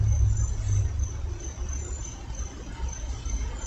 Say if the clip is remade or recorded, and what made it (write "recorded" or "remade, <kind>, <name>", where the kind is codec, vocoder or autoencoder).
recorded